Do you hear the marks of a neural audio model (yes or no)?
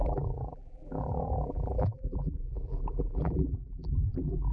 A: yes